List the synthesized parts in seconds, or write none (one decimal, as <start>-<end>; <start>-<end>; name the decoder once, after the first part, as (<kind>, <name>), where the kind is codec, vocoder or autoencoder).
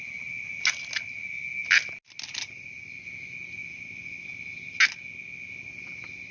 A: none